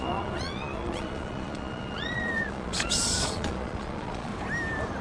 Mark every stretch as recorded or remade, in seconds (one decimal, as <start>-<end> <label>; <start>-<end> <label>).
0.0-4.3 remade; 4.3-5.0 recorded